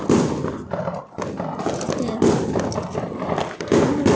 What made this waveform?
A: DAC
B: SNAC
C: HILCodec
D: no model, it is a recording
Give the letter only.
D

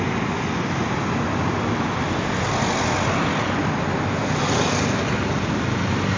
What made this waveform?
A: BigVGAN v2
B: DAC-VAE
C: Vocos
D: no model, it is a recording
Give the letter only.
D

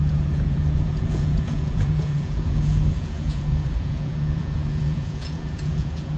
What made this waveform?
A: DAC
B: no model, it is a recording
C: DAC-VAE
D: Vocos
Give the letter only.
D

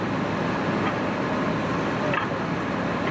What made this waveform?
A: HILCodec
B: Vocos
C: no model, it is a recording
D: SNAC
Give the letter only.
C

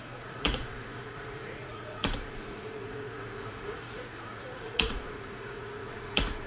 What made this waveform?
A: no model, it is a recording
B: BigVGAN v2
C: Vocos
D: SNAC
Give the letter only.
C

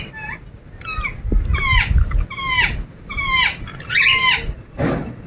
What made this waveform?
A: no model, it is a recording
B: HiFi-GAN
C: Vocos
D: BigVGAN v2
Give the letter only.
A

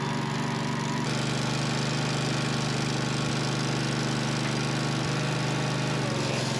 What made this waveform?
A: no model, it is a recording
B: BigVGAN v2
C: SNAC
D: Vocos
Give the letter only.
A